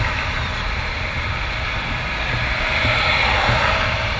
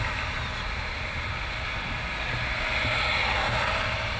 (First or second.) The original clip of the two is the second